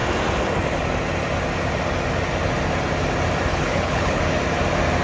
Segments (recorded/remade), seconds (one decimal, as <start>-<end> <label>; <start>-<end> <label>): 0.0-3.5 recorded; 3.5-4.2 remade; 4.2-5.0 recorded